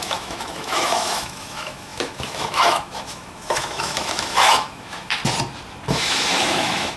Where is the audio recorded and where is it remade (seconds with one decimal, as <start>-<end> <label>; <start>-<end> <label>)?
0.0-5.2 remade; 5.2-5.9 recorded; 5.9-7.0 remade